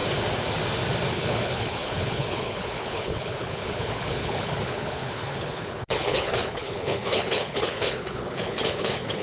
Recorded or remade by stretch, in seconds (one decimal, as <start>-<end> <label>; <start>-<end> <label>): 0.0-1.1 recorded; 1.1-9.2 remade